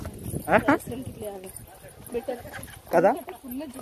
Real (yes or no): yes